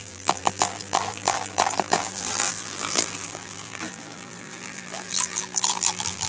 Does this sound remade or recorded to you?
remade